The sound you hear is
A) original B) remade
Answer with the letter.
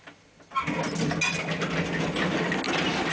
A